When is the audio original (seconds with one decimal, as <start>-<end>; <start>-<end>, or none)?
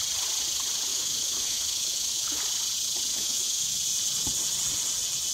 0.0-0.9; 2.4-3.1; 3.8-5.3